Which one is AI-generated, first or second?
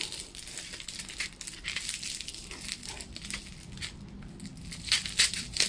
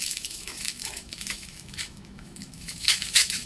second